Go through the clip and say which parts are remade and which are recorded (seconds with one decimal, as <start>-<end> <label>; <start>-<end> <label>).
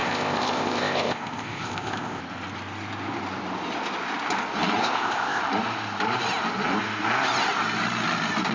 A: 0.0-2.2 remade; 2.2-4.8 recorded; 4.8-5.4 remade; 5.4-8.5 recorded